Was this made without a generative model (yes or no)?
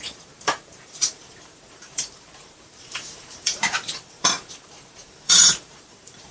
no